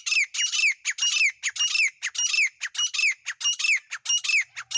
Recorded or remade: recorded